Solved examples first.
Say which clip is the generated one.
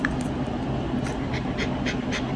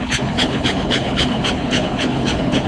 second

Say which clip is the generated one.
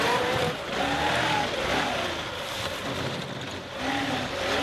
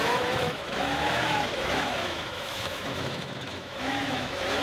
second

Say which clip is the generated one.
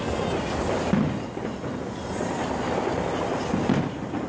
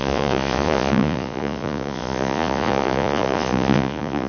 second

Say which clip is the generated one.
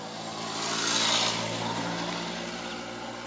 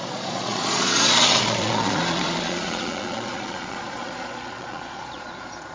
second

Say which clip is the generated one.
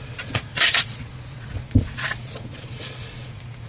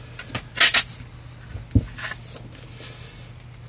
first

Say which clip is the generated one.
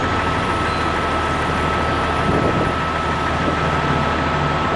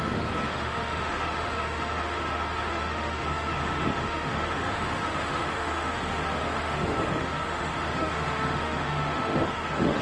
second